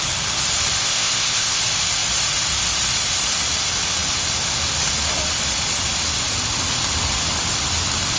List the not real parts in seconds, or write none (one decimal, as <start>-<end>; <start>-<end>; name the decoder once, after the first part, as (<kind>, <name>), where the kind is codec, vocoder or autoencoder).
0.8-1.6 (codec, ZipCodec)